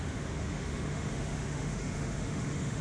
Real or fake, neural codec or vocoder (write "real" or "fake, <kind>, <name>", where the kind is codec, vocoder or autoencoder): fake, autoencoder, DAC-VAE